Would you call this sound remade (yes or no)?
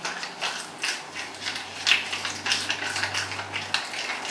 no